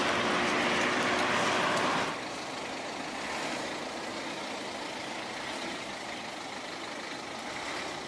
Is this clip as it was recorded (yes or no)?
yes